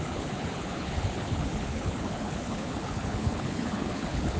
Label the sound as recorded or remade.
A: remade